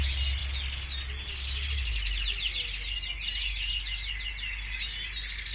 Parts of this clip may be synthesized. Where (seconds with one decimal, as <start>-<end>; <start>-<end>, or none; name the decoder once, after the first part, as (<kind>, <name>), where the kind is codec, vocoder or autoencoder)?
none